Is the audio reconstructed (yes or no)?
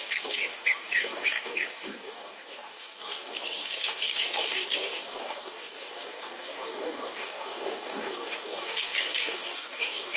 yes